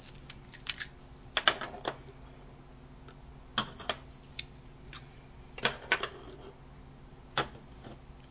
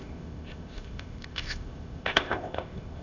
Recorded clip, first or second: first